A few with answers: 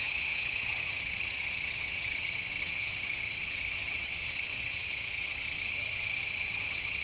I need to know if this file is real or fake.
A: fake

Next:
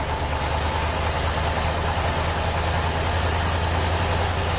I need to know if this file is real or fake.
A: real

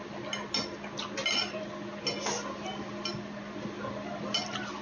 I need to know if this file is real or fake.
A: real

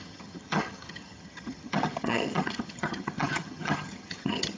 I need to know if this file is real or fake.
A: fake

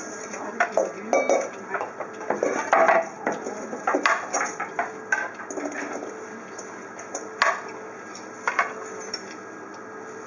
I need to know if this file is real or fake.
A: real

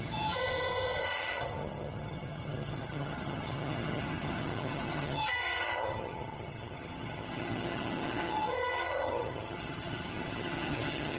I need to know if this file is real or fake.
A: fake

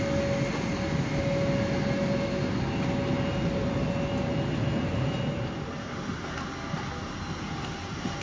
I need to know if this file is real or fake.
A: real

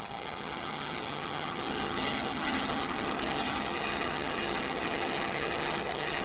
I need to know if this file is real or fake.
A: fake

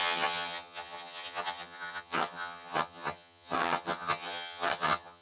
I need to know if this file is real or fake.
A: fake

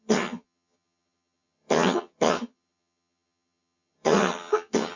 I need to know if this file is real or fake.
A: fake